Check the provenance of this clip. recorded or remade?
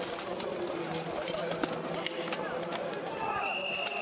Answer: recorded